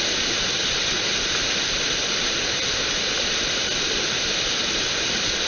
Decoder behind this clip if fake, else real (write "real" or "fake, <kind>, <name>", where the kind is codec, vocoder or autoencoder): real